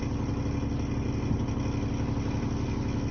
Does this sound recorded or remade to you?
recorded